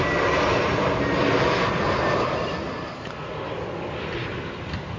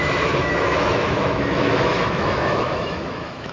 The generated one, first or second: second